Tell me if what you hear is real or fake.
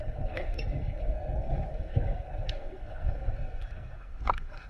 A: fake